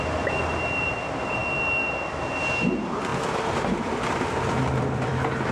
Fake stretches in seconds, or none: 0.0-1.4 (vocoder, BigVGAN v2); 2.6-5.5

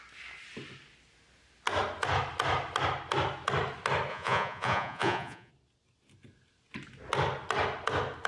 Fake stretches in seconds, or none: 4.1-5.5 (vocoder, Vocos)

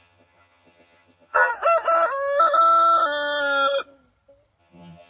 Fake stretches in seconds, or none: 0.0-1.5 (vocoder, HiFi-GAN); 4.6-5.1